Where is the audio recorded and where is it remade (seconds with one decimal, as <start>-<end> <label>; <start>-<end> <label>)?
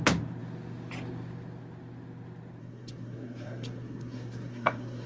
0.0-2.6 recorded; 2.6-5.1 remade